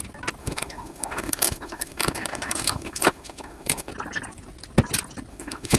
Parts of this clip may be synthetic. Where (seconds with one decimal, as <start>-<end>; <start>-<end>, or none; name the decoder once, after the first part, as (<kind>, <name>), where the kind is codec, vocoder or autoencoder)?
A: 0.4-3.9 (autoencoder, DAC-VAE); 5.3-5.8